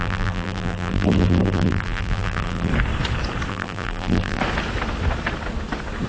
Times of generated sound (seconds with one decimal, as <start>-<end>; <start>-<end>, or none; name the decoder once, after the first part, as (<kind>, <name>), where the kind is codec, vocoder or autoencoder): 0.0-2.7 (vocoder, BigVGAN v2); 3.5-4.4